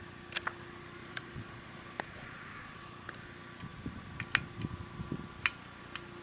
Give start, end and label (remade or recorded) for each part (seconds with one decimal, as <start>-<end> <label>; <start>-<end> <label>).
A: 0.0-1.0 recorded; 1.0-2.9 remade; 2.9-6.2 recorded